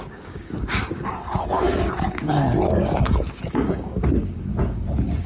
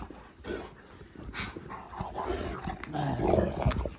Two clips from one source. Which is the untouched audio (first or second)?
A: second